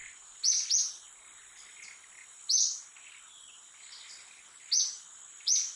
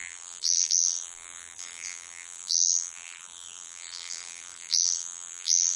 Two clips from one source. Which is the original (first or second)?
first